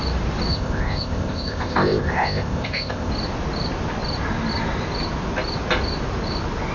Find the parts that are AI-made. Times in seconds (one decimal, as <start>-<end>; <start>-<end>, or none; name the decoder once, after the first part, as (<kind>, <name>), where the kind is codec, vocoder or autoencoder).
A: 0.5-3.1 (codec, ZipCodec)